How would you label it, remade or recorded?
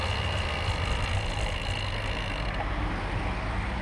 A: recorded